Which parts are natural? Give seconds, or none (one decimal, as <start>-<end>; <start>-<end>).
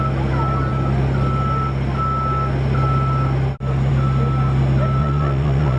0.0-5.0